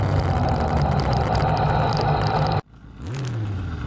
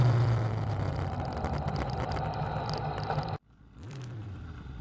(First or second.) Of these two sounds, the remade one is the second